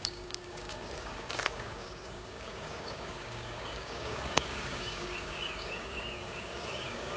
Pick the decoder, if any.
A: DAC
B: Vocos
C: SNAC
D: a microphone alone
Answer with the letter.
A